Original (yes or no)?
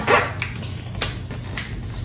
yes